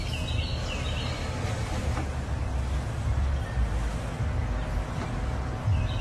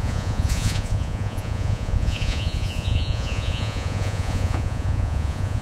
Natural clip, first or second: first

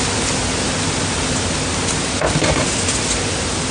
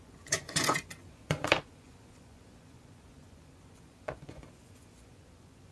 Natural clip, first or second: first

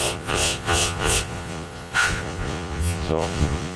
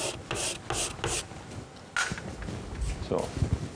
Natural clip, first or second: second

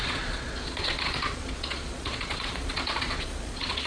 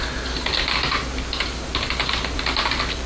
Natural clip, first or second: second